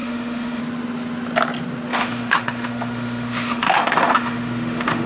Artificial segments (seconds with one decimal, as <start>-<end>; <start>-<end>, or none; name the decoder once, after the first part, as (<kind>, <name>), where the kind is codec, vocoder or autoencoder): 0.0-0.6 (autoencoder, DAC-VAE); 1.9-5.1